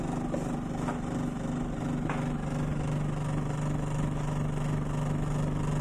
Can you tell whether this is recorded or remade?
recorded